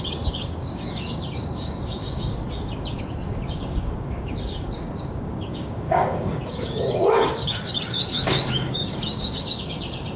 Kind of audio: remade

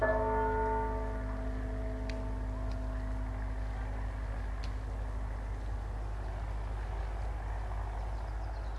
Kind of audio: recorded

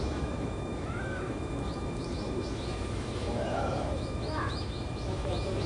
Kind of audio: remade